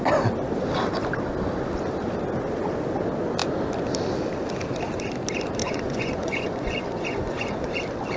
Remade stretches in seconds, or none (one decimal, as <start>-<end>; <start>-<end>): 5.6-7.7